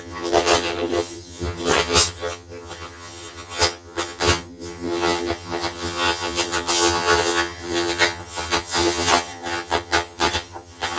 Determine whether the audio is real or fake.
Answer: fake